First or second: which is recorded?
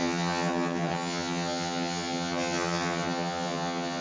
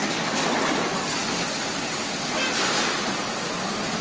second